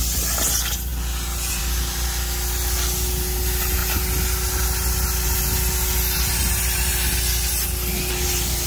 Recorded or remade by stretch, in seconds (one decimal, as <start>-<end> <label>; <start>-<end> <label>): 0.0-8.7 recorded